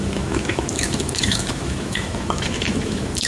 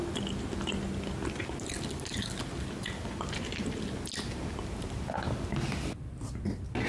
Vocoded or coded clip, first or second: first